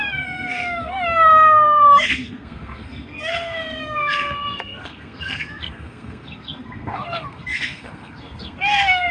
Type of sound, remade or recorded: remade